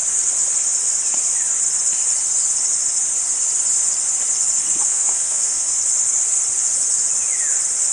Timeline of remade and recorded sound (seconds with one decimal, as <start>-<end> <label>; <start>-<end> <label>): 0.0-4.9 recorded; 4.9-5.7 remade; 5.7-7.9 recorded